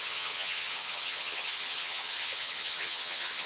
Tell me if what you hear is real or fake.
fake